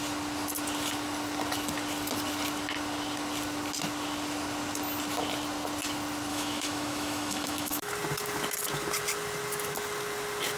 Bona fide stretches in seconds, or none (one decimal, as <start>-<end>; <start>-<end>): 0.0-6.3; 7.9-10.6